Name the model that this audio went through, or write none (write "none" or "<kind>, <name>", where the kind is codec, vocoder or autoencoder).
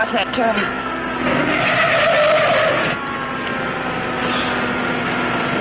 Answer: none